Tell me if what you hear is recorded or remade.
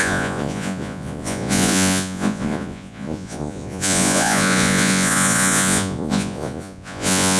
remade